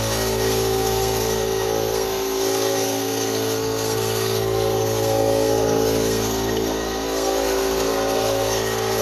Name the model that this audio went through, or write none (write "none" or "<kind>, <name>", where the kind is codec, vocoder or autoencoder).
codec, SNAC